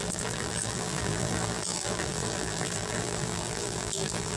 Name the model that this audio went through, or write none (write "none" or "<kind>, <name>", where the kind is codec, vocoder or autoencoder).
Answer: vocoder, BigVGAN v2